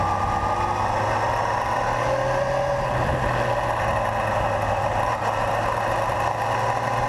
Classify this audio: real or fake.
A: real